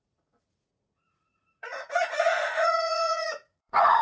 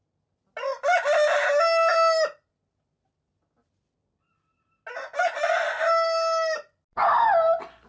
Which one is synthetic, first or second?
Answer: first